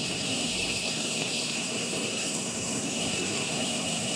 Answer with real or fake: fake